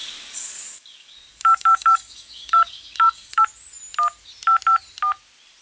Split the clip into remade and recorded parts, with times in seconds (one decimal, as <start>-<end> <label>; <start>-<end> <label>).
0.0-3.4 remade; 3.4-5.6 recorded